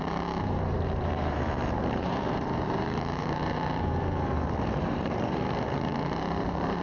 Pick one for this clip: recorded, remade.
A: remade